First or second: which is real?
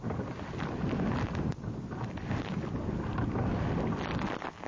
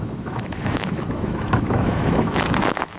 first